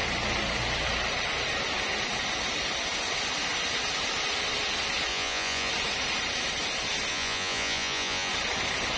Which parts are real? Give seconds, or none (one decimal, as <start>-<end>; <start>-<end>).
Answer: 0.0-5.1; 5.7-7.1; 8.3-9.0